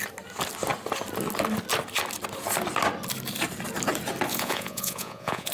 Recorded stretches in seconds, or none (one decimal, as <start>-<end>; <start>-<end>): 0.0-4.3